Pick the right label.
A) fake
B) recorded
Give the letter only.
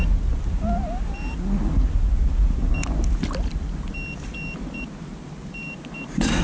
B